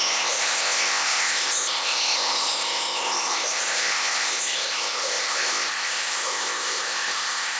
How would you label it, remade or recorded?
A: remade